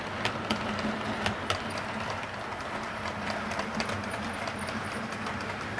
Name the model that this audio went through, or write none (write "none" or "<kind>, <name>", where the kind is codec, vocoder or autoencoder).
none